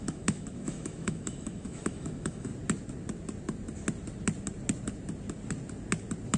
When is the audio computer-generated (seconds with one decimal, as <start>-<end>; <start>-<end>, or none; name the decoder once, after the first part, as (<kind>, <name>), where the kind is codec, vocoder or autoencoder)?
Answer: 0.0-2.5 (autoencoder, DAC-VAE)